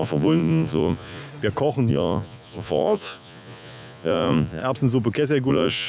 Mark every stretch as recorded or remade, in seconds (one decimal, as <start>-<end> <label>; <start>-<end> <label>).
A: 0.0-1.2 remade; 1.2-1.9 recorded; 1.9-4.6 remade; 4.6-5.5 recorded; 5.5-5.9 remade